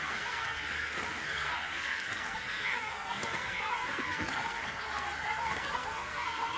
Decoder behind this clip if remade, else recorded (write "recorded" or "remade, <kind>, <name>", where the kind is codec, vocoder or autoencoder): remade, codec, SNAC